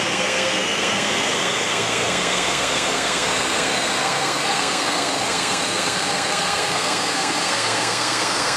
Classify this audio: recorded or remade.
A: remade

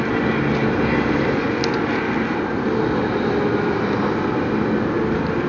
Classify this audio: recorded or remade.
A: recorded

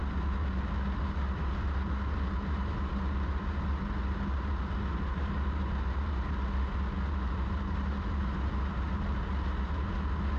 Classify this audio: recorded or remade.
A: recorded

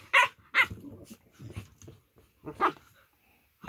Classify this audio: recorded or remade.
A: recorded